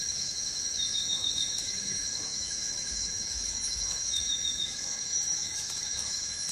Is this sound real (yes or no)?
no